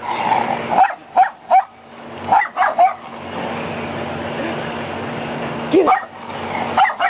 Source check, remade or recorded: recorded